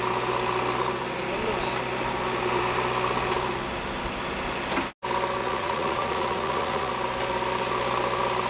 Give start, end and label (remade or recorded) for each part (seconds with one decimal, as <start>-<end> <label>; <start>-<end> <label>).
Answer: 0.0-5.4 recorded; 5.4-6.9 remade; 6.9-8.5 recorded